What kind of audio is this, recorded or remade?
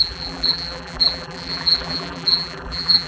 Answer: remade